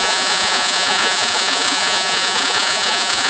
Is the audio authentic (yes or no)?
no